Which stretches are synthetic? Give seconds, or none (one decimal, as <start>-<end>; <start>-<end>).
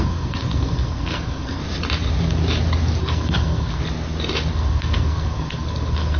0.0-1.6; 3.0-3.8; 4.5-6.2